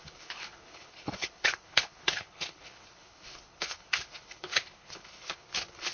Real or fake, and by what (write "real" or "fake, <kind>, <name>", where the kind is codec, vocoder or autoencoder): fake, codec, HILCodec